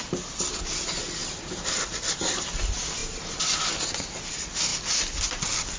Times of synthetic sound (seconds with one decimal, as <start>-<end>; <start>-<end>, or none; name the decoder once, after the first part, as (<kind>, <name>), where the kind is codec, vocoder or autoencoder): 1.2-1.8 (vocoder, BigVGAN v2)